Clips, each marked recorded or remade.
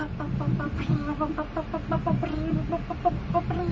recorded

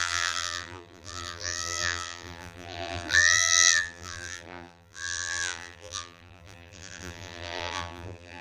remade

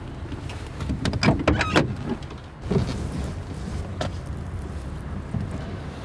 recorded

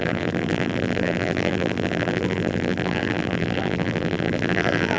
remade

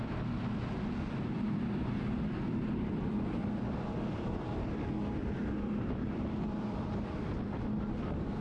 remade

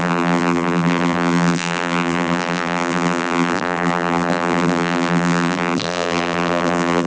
remade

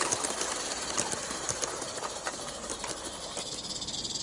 recorded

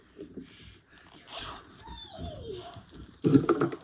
remade